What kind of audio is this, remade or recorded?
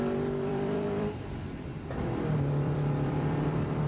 remade